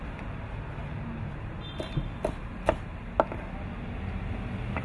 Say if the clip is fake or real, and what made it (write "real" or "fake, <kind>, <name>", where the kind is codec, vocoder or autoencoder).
real